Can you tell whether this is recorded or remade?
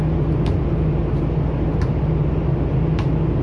recorded